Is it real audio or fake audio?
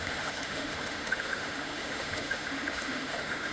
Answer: fake